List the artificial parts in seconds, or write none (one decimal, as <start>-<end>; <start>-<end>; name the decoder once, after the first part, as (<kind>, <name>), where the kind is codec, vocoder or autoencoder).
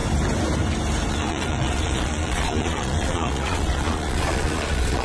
1.1-5.0 (vocoder, Vocos)